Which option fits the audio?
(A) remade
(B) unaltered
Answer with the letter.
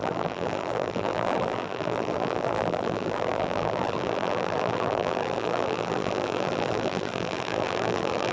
A